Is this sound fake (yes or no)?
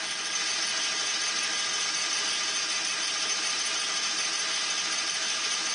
no